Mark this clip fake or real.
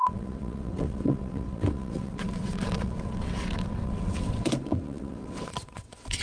fake